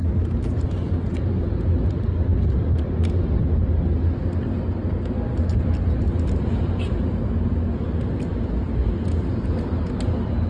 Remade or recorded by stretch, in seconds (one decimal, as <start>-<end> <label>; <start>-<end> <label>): 0.0-10.5 recorded

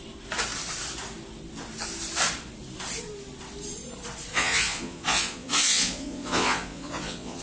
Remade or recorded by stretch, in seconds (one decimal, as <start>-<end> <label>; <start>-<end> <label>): 0.0-4.3 recorded; 4.3-7.4 remade

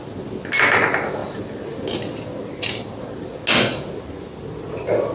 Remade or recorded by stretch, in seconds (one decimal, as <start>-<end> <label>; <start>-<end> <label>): 0.0-5.1 recorded

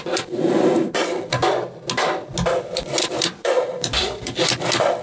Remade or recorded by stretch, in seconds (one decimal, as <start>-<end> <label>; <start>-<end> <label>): 0.0-1.4 remade; 1.4-2.6 recorded; 2.6-5.0 remade

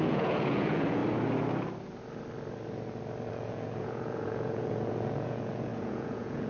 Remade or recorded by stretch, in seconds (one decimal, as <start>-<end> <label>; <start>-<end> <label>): 0.0-1.0 remade; 1.0-3.3 recorded; 3.3-6.5 remade

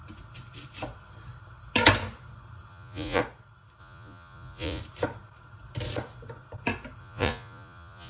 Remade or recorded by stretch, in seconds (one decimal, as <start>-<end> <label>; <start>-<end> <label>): 0.0-2.7 recorded; 2.7-3.2 remade; 3.2-3.8 recorded; 3.8-4.8 remade; 4.8-7.0 recorded; 7.0-8.1 remade